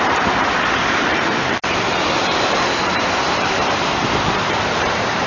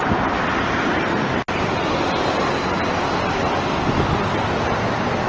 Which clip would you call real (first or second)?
second